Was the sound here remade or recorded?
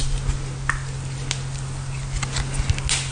recorded